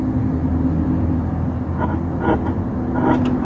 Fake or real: real